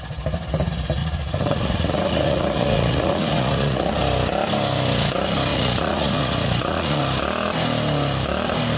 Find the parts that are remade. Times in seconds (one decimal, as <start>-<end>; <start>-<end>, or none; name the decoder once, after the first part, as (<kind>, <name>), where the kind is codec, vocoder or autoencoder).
1.0-4.0 (vocoder, Vocos); 5.5-7.0